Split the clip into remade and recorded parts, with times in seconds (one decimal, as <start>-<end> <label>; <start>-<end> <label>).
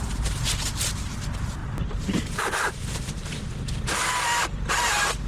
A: 0.0-1.6 recorded; 1.6-3.5 remade; 3.5-5.3 recorded